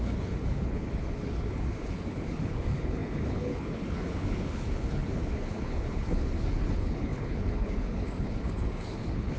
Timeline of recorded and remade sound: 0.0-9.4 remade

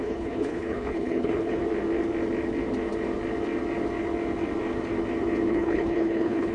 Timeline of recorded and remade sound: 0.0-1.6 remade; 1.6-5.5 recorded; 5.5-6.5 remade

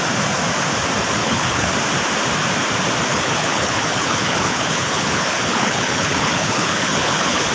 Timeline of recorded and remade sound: 0.0-1.2 recorded; 1.2-1.7 remade; 1.7-3.1 recorded; 3.1-7.5 remade

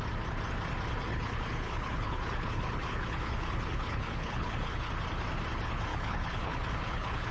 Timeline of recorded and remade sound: 0.0-1.1 recorded; 1.1-4.9 remade; 4.9-5.9 recorded; 5.9-7.3 remade